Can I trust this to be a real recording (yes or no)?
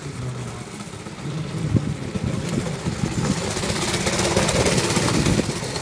yes